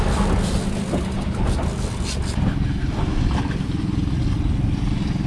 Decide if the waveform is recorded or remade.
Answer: recorded